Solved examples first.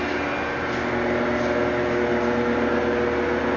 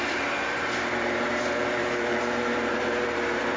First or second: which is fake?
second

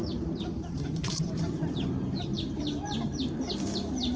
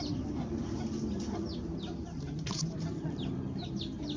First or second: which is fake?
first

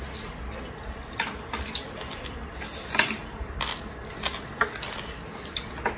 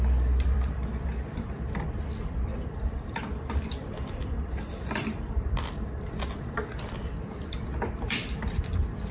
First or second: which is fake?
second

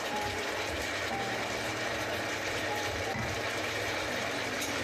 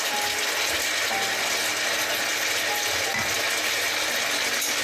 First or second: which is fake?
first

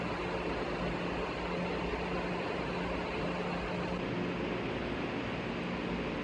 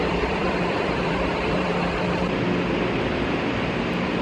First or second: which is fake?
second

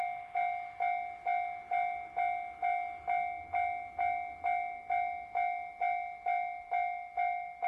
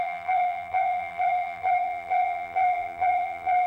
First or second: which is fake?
second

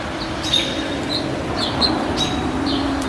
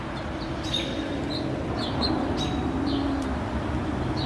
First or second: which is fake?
first